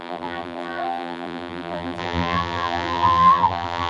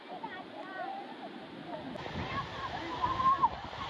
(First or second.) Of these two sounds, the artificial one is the first